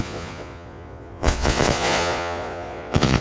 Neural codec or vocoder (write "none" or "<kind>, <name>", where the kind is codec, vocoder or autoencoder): vocoder, Vocos